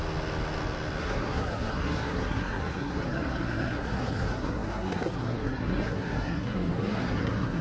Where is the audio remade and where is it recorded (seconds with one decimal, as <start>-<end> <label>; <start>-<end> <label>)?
0.0-1.0 recorded; 1.0-7.6 remade